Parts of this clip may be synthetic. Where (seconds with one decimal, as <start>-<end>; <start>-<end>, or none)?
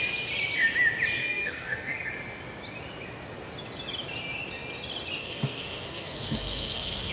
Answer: 1.2-2.1; 5.2-7.1